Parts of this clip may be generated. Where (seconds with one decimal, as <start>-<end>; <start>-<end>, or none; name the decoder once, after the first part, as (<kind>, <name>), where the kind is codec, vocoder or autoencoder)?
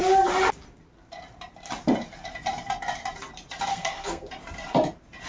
3.7-4.3 (codec, SNAC)